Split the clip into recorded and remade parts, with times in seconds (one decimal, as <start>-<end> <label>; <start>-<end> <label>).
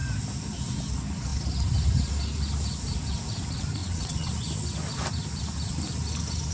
0.0-3.8 recorded; 3.8-4.3 remade; 4.3-6.5 recorded